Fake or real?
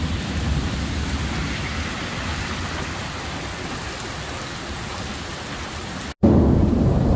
real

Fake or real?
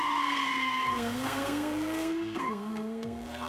fake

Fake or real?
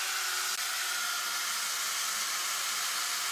real